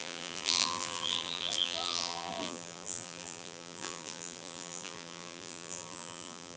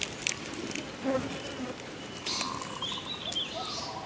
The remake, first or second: first